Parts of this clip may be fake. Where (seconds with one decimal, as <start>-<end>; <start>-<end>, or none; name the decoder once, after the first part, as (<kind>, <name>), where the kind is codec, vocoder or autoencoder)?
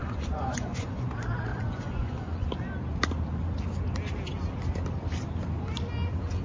0.0-1.1 (vocoder, Vocos); 1.5-2.5